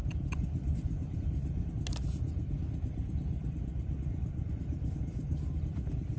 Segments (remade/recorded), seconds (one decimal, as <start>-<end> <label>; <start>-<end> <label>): 0.0-6.2 recorded